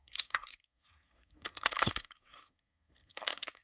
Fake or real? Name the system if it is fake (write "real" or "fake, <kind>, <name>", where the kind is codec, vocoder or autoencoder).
fake, codec, SNAC